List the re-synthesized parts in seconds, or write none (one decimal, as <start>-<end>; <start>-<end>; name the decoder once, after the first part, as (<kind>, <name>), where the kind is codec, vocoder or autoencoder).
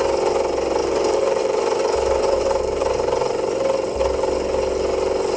0.8-4.0 (vocoder, BigVGAN v2)